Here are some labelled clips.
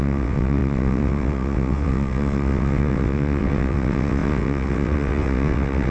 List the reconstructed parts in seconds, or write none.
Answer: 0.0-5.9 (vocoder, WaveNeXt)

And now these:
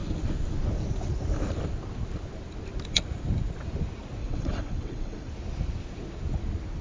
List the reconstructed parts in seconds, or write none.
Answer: 4.2-5.3 (vocoder, WaveNeXt)

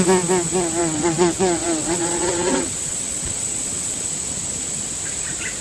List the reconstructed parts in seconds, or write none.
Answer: 0.8-4.1 (vocoder, WaveNeXt)

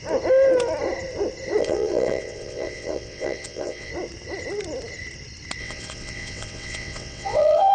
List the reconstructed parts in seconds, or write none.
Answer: 1.6-3.9 (vocoder, WaveNeXt); 5.6-7.7

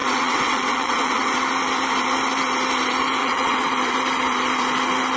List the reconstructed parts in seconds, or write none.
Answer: 0.0-1.4 (vocoder, WaveNeXt); 3.2-3.7

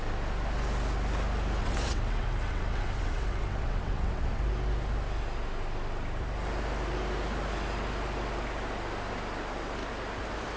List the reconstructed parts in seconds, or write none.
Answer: 1.6-4.4 (vocoder, WaveNeXt)